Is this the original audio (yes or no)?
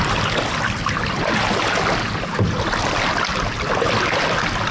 yes